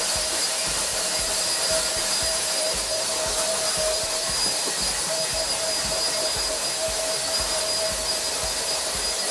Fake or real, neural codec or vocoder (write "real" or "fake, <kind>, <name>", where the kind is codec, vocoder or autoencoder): fake, vocoder, BigVGAN v2